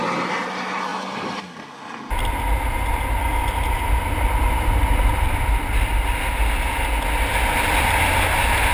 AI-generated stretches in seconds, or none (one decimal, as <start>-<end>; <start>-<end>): none